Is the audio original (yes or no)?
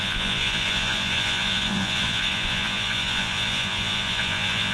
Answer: no